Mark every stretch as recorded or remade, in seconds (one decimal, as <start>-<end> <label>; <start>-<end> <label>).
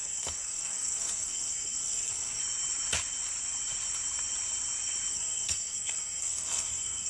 0.0-2.4 remade; 2.4-5.1 recorded; 5.1-7.1 remade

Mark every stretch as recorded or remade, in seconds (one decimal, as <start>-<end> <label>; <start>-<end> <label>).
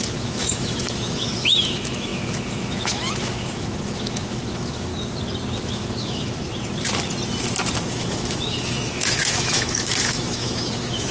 0.0-4.9 remade; 4.9-5.6 recorded; 5.6-6.5 remade; 6.5-7.9 recorded; 7.9-11.1 remade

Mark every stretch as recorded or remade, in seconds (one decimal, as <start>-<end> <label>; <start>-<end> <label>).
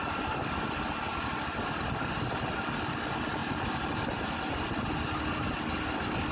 0.0-6.3 recorded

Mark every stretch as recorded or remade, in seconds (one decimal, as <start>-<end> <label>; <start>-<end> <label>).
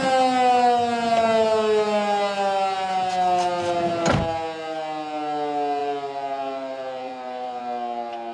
0.0-5.8 recorded; 5.8-7.6 remade; 7.6-8.3 recorded